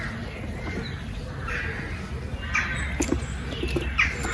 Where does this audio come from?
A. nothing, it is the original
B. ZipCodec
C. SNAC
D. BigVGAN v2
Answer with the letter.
A